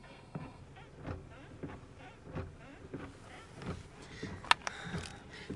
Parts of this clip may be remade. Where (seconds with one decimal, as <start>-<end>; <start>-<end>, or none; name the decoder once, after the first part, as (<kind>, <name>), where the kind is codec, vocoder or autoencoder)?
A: 0.0-0.6 (codec, SNAC)